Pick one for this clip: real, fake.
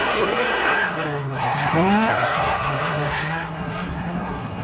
fake